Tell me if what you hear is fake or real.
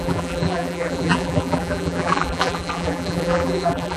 fake